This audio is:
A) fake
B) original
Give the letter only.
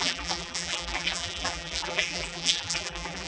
A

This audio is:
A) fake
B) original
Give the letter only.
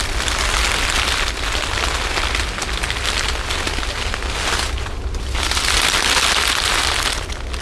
B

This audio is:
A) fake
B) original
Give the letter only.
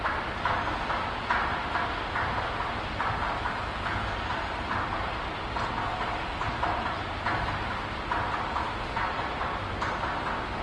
B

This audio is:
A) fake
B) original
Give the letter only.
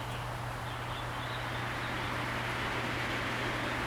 B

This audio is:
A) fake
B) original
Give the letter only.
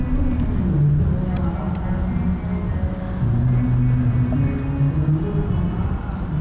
B